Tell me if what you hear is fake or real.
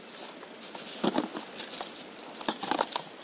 real